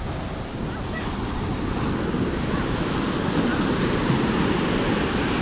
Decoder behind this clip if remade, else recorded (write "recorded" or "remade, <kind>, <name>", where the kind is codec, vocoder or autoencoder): recorded